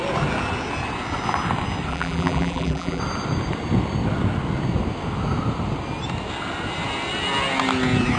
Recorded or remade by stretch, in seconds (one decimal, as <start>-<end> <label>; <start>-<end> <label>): 0.0-1.9 recorded; 1.9-3.0 remade; 3.0-8.2 recorded

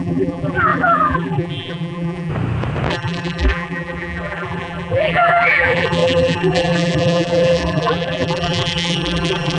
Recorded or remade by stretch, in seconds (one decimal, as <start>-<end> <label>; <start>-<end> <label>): 0.0-2.3 remade; 2.3-2.9 recorded; 2.9-9.6 remade

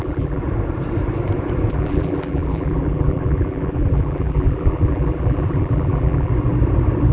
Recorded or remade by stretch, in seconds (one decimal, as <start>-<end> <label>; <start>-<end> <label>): 0.0-0.4 remade; 0.4-1.7 recorded; 1.7-6.3 remade; 6.3-7.1 recorded